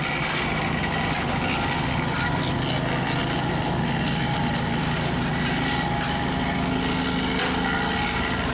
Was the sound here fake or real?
real